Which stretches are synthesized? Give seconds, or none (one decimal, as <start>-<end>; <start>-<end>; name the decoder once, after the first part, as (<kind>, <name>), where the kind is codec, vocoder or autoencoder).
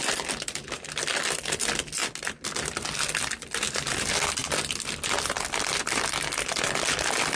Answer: none